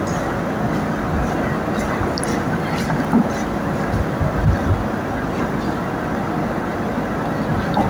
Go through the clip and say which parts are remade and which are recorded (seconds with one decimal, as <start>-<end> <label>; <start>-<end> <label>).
0.0-7.9 recorded